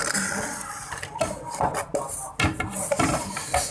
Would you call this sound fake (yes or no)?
no